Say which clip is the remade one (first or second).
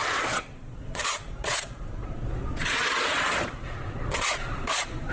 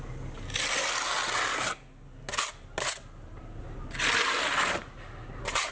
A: first